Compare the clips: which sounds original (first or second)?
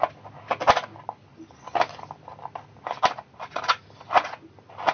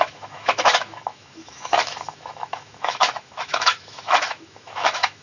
first